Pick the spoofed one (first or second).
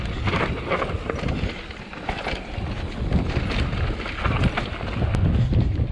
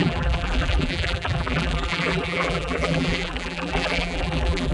second